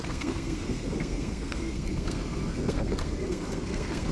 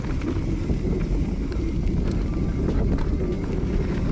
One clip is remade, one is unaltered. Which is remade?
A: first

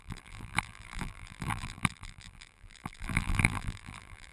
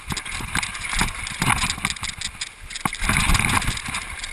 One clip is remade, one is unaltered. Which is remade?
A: first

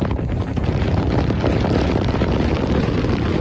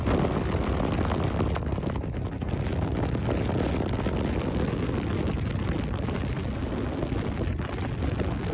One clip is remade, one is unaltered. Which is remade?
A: first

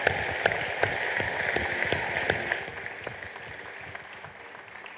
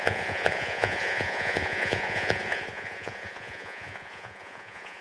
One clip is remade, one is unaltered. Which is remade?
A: second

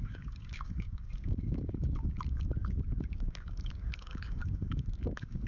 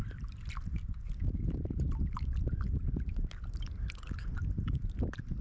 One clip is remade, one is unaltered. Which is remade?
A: first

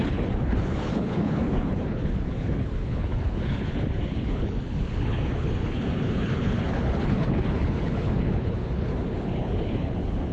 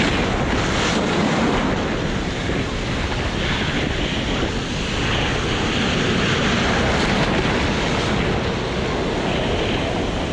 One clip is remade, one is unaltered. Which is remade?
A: first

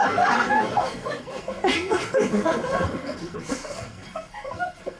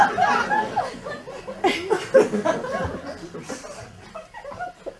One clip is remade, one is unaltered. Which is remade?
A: first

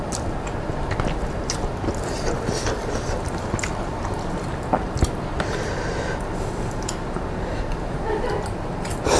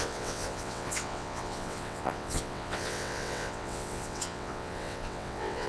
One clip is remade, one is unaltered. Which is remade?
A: second